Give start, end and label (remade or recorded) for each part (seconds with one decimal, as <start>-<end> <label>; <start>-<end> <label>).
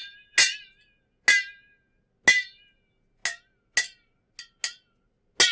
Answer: 0.0-5.5 recorded